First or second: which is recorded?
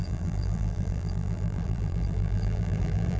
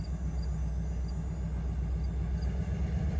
second